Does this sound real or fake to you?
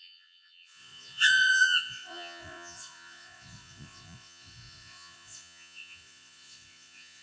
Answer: fake